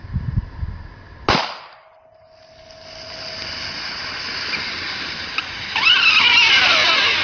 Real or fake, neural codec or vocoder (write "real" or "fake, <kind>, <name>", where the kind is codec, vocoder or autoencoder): real